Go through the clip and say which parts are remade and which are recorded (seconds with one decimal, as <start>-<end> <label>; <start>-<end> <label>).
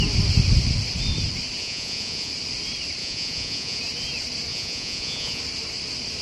0.0-1.6 recorded; 1.6-2.3 remade; 2.3-3.0 recorded; 3.0-3.8 remade; 3.8-4.5 recorded; 4.5-5.4 remade; 5.4-6.2 recorded